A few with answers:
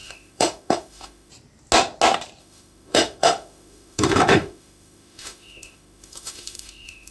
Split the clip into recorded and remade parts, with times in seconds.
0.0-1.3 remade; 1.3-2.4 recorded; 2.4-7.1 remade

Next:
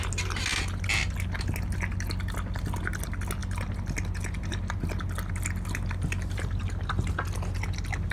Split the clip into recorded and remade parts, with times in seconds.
0.0-8.1 recorded

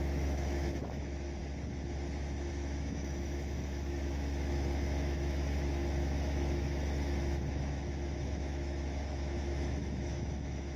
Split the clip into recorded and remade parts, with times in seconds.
0.0-1.4 remade; 1.4-2.5 recorded; 2.5-10.8 remade

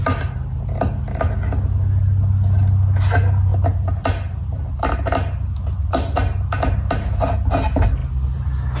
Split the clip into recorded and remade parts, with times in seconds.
0.0-8.8 recorded

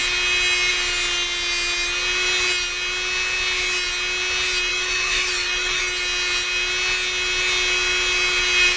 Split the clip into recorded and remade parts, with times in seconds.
0.0-4.7 recorded; 4.7-5.8 remade; 5.8-8.8 recorded